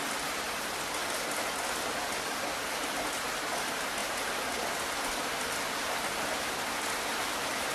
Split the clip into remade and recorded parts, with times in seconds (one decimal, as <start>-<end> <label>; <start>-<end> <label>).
0.0-7.7 recorded